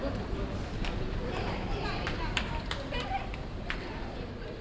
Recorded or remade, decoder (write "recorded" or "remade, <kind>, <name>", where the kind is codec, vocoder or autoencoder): remade, vocoder, BigVGAN v2